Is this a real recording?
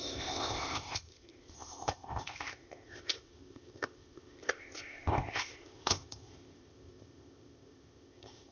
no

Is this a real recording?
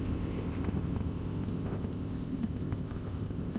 no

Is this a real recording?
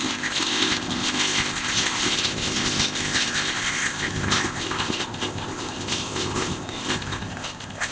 no